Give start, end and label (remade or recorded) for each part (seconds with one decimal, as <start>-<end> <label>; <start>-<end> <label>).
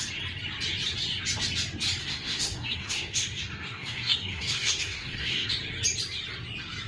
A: 0.0-2.0 recorded; 2.0-5.5 remade; 5.5-6.9 recorded